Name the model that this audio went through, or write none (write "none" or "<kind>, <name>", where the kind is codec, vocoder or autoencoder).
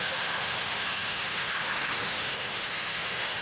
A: autoencoder, DAC-VAE